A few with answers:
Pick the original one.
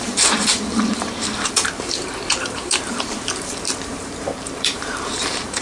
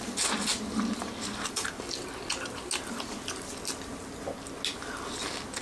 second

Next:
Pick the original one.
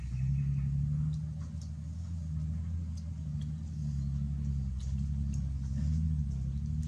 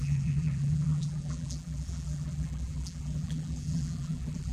first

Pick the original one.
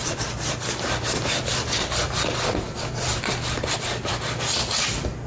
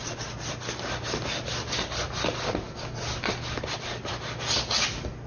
second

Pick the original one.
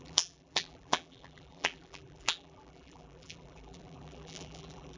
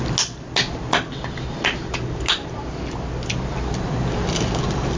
second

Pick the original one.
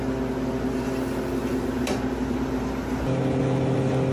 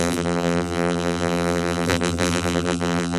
first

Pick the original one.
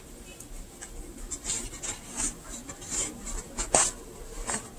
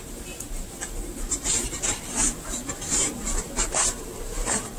first